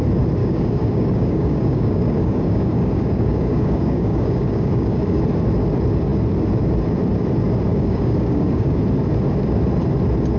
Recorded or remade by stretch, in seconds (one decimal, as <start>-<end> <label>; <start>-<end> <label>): 0.0-0.4 recorded; 0.4-5.2 remade; 5.2-7.7 recorded; 7.7-8.8 remade; 8.8-10.4 recorded